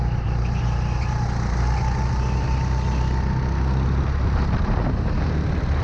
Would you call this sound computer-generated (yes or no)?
no